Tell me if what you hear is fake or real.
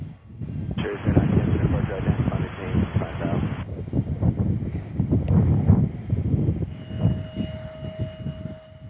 real